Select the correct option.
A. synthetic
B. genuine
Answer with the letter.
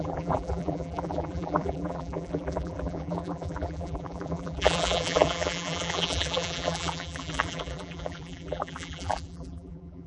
A